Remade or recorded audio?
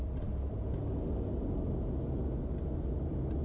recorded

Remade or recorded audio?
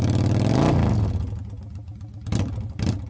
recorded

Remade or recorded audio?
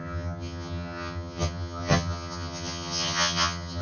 remade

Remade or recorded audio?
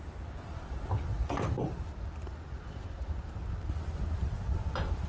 recorded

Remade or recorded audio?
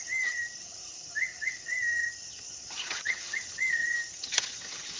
remade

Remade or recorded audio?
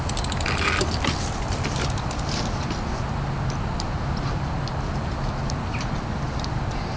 recorded